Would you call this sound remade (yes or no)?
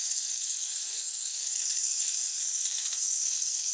yes